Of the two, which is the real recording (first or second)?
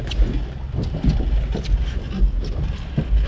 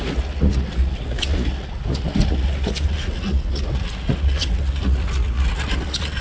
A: first